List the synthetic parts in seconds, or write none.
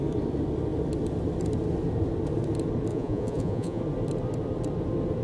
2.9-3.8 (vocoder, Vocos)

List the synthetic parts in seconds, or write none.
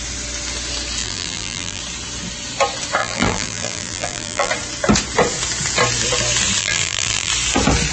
1.0-1.8 (vocoder, BigVGAN v2); 3.0-4.5; 6.6-7.3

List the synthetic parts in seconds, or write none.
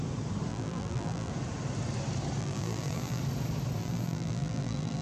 0.5-1.3 (vocoder, BigVGAN v2); 2.4-3.2; 3.8-5.0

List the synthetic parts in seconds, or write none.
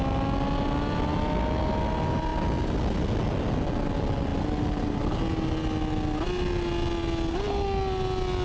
none